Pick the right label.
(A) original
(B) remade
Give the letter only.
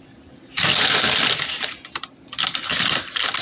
A